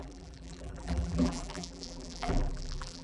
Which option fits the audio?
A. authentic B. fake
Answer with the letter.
B